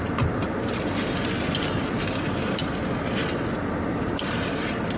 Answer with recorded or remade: recorded